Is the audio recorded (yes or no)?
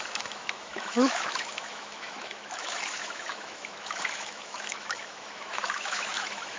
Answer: no